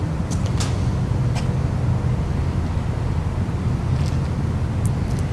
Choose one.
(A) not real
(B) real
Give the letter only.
B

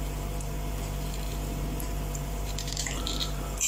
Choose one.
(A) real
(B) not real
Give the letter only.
B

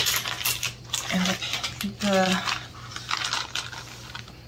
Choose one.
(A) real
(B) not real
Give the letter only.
A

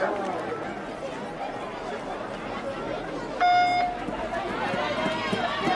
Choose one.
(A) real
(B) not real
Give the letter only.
A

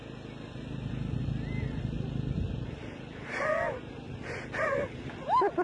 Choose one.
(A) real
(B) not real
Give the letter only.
A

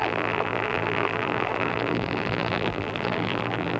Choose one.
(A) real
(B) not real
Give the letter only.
B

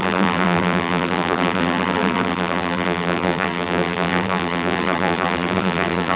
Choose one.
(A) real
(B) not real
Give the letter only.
B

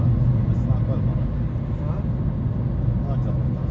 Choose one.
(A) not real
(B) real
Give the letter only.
B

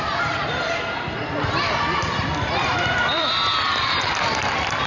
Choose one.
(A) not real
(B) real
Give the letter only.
A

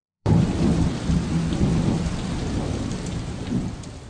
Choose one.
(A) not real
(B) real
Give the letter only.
A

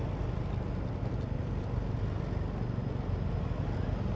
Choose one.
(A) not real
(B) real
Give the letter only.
B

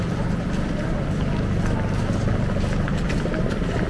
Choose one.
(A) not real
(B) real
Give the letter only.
B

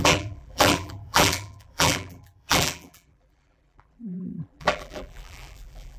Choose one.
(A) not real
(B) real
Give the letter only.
A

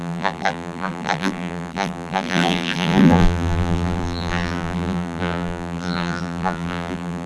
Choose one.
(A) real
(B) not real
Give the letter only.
B